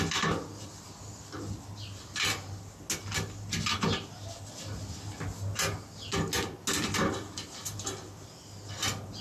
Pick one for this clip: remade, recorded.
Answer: recorded